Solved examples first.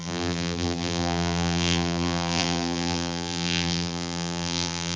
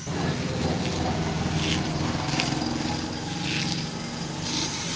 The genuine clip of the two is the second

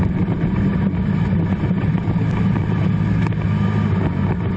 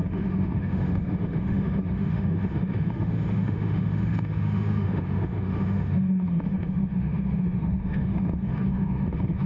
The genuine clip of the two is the first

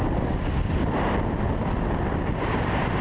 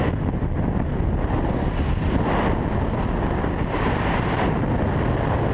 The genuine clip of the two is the second